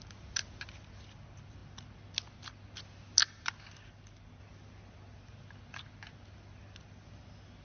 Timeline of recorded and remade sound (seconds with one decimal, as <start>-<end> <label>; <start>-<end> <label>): 0.0-7.6 recorded